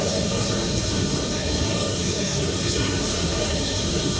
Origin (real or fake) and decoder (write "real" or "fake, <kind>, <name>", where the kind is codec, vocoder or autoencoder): fake, codec, SNAC